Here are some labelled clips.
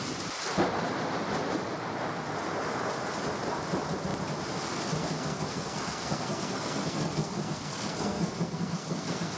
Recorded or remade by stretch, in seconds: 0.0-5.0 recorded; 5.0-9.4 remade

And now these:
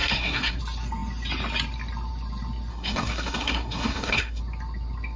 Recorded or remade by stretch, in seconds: 0.0-0.6 remade; 0.6-2.7 recorded; 2.7-4.4 remade; 4.4-5.2 recorded

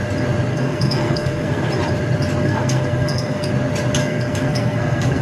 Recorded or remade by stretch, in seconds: 0.0-0.5 recorded; 0.5-1.7 remade; 1.7-2.4 recorded; 2.4-3.5 remade; 3.5-4.0 recorded; 4.0-5.2 remade

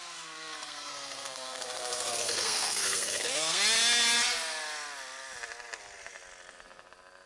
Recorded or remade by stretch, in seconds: 0.0-3.6 remade; 3.6-7.3 recorded

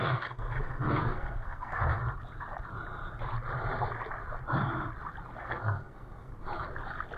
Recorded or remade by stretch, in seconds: 0.0-2.0 remade; 2.0-5.4 recorded; 5.4-6.3 remade; 6.3-7.2 recorded

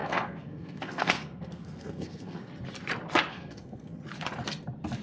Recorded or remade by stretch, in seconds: 0.0-2.5 remade; 2.5-3.3 recorded; 3.3-4.0 remade; 4.0-5.0 recorded